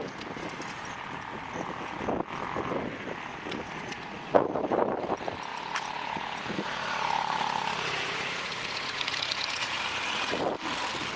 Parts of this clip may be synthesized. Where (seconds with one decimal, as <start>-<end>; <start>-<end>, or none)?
1.3-2.0; 3.3-4.6; 5.5-10.4